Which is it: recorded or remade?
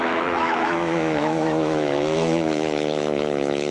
remade